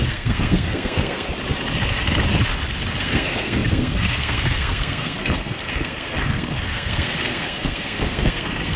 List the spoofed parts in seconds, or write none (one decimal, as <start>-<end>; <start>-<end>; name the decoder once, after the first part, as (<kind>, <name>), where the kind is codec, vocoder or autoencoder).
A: 0.0-1.3 (codec, SNAC); 3.0-8.8